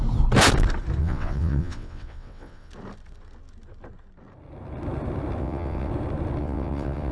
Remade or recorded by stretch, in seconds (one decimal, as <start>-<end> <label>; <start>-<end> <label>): 0.0-1.0 recorded; 1.0-2.7 remade; 2.7-5.4 recorded; 5.4-5.9 remade; 5.9-6.4 recorded; 6.4-7.1 remade